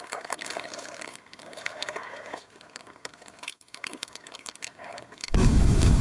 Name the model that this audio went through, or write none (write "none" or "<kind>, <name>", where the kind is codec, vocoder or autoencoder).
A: codec, SNAC